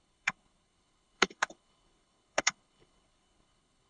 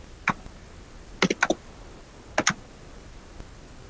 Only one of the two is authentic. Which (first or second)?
second